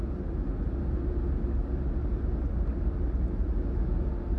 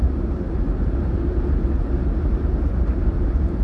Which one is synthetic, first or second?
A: second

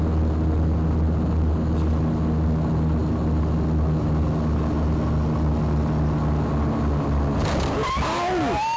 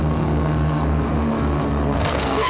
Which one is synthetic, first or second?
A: second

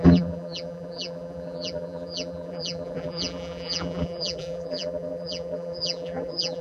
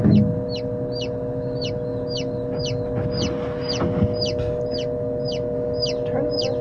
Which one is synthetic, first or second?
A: first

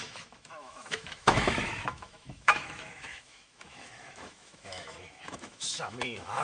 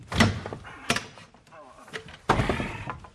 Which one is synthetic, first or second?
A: first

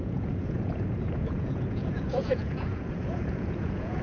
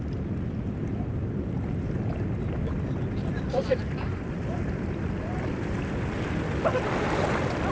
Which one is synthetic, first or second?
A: first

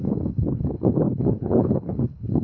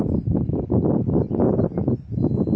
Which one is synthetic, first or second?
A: first